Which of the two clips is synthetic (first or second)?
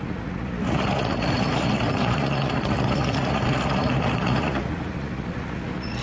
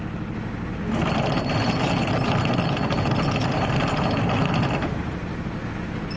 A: first